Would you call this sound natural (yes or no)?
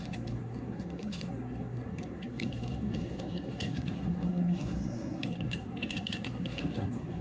no